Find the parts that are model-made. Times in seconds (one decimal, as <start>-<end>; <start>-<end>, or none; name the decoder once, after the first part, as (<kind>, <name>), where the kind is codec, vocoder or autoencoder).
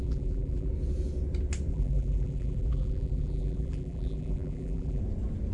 0.0-0.7 (vocoder, BigVGAN v2); 1.7-5.0